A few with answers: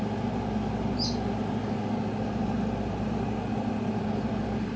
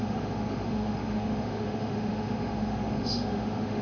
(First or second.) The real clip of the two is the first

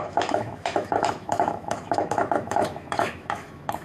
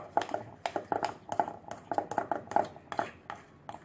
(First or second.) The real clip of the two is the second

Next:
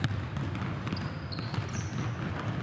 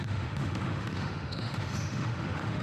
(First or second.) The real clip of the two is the first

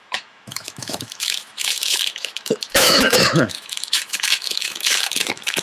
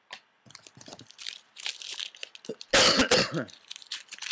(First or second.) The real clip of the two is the second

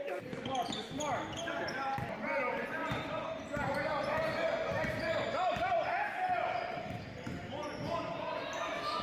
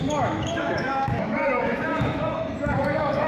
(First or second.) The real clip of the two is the first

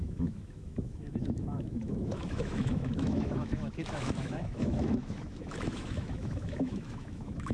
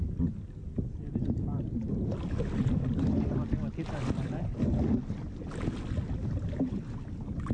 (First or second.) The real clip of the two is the second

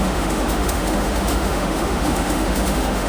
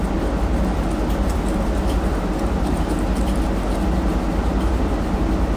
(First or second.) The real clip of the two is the second